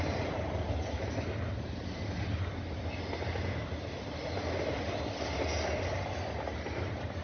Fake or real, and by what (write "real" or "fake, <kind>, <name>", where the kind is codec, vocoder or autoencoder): real